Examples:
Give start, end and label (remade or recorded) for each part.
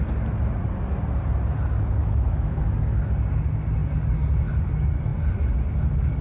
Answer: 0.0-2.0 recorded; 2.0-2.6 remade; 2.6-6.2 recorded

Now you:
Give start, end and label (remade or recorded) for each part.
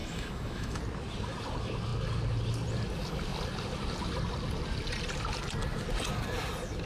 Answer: 0.0-0.8 remade; 0.8-6.9 recorded